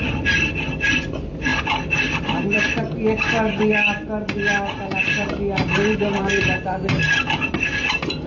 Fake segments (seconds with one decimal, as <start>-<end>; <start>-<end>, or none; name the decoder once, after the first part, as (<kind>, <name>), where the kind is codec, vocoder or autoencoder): 0.0-1.1 (vocoder, BigVGAN v2); 1.5-2.8; 4.9-7.7